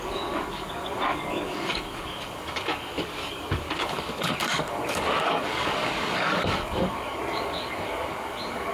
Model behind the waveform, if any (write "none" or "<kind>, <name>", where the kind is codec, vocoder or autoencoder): codec, DAC